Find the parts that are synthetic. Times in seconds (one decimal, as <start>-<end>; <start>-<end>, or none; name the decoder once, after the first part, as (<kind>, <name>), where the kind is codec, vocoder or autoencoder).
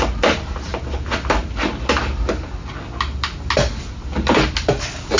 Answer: none